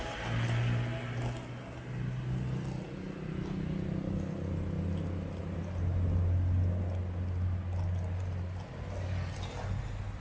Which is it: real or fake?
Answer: real